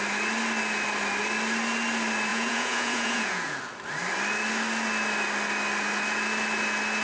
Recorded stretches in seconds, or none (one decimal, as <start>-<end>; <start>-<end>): 0.0-2.3; 3.6-7.0